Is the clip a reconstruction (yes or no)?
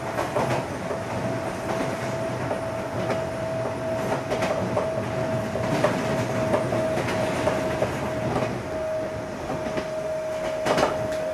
no